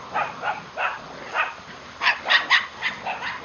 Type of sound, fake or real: real